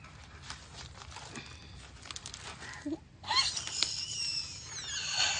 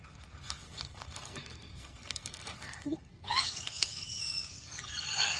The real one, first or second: first